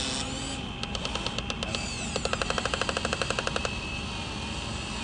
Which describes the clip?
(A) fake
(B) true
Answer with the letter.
B